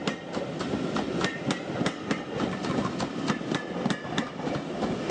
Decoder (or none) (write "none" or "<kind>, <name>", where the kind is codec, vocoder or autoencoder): vocoder, BigVGAN v2